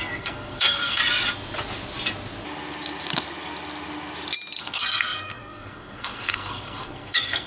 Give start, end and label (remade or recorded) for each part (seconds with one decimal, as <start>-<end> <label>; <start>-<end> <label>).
0.0-1.0 remade; 1.0-4.6 recorded; 4.6-7.5 remade